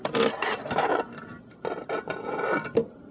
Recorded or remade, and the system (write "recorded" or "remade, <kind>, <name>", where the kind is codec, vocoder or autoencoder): recorded